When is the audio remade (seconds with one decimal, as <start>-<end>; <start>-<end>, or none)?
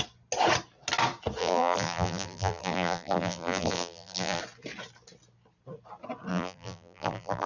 1.4-4.4; 6.3-7.5